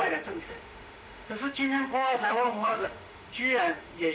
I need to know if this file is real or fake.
fake